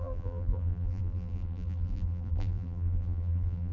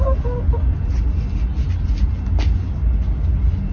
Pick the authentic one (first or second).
second